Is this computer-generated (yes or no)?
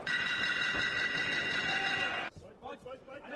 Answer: yes